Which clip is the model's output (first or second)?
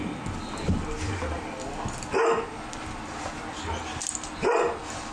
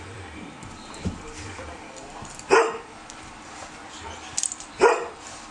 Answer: second